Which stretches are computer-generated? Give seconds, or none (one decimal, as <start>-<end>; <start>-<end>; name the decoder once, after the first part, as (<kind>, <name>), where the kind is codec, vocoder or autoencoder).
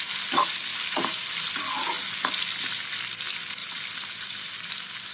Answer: 0.7-1.3 (vocoder, BigVGAN v2); 3.6-4.5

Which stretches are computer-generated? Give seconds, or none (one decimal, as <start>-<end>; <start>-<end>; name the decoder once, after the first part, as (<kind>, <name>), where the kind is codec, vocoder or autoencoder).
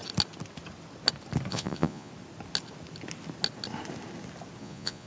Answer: 1.5-2.1 (vocoder, Vocos); 4.6-5.1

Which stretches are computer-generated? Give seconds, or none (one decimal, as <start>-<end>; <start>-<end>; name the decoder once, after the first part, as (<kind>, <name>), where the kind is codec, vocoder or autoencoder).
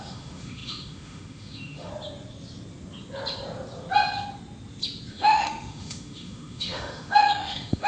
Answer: 0.0-1.9 (autoencoder, DAC-VAE); 5.1-7.9